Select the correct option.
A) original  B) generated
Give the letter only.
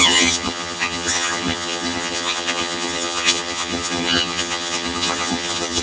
B